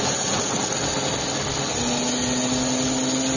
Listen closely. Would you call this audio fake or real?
real